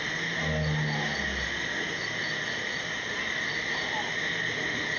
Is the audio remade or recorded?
recorded